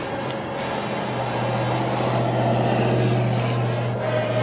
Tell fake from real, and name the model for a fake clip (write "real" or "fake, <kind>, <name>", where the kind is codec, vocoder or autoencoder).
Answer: real